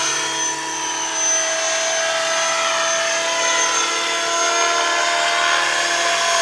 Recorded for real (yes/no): yes